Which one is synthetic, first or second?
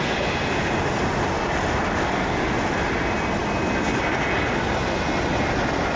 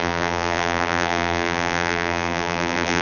second